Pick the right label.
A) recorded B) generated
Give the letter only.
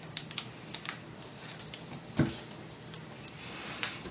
B